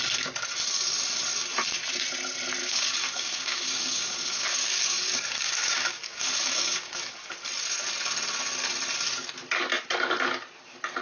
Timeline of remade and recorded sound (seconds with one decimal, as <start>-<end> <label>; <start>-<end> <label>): 0.0-2.6 recorded; 2.6-7.3 remade; 7.3-11.0 recorded